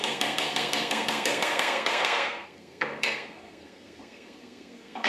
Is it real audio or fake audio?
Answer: fake